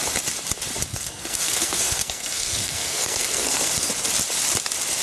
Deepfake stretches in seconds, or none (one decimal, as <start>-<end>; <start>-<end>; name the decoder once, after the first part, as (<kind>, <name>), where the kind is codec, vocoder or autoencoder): 0.9-3.9 (codec, SNAC)